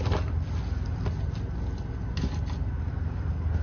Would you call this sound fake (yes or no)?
no